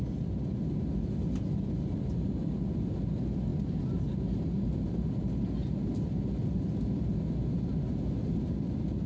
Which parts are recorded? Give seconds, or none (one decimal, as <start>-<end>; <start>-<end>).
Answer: 0.0-9.1